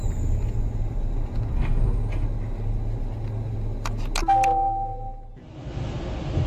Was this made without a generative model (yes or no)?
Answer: yes